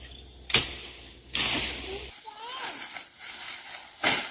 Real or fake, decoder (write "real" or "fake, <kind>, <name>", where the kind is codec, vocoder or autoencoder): real